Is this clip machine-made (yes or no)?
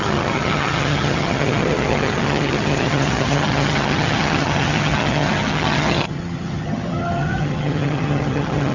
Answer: yes